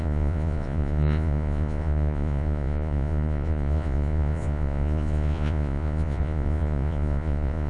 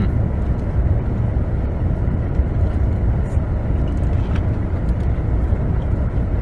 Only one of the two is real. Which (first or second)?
second